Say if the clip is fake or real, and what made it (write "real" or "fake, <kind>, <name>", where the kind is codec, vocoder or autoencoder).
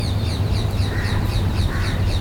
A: fake, vocoder, BigVGAN v2